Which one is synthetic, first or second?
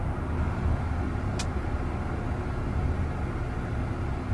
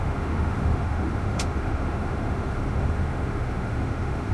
second